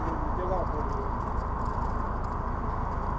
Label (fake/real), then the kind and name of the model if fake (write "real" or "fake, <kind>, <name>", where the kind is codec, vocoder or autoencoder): real